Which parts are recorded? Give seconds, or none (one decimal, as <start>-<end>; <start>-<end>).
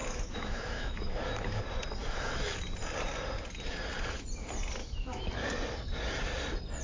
1.6-2.0; 2.6-4.8; 5.3-6.8